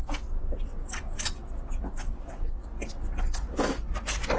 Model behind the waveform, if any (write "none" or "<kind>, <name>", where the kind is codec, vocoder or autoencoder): none